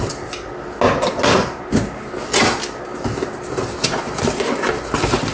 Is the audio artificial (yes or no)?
no